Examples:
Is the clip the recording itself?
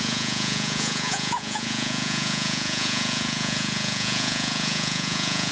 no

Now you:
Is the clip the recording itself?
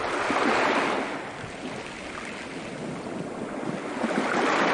yes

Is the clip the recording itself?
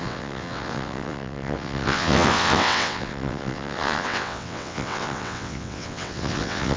no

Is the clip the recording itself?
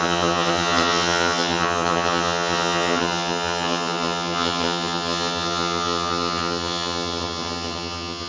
no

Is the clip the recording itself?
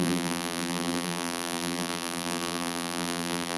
no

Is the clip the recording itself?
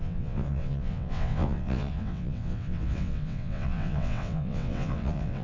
no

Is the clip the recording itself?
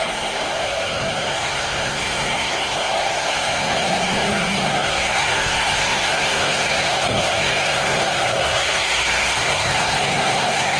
no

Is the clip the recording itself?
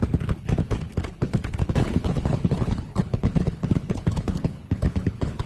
no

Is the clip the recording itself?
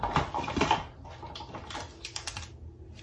yes